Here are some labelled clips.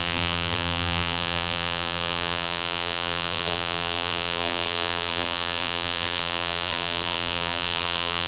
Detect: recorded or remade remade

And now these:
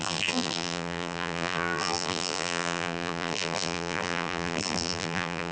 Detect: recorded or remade remade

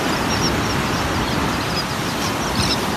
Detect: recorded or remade recorded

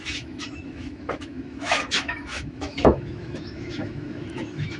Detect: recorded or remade remade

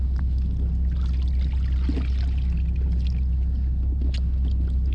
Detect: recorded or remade recorded